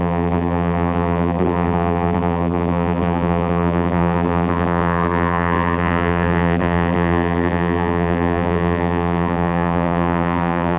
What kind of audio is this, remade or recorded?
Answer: remade